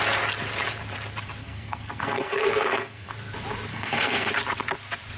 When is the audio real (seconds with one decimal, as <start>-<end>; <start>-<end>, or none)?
0.0-1.4; 3.1-3.7; 4.3-5.2